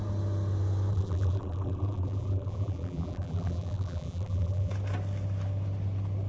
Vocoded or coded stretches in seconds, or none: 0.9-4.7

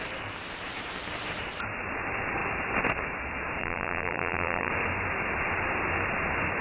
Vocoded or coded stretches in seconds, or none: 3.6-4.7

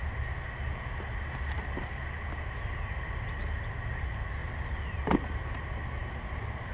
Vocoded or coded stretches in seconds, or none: 4.4-5.6